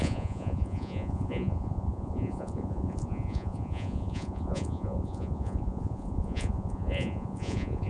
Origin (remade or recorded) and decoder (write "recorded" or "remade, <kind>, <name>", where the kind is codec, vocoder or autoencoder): remade, vocoder, Vocos